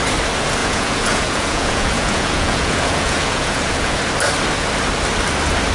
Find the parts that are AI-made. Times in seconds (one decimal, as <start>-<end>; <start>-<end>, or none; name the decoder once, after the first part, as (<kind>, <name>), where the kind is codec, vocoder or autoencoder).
0.6-4.0 (vocoder, Vocos)